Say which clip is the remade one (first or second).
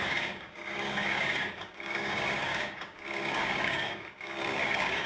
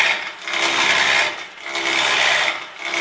first